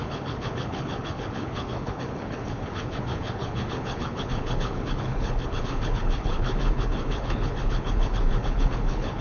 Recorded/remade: remade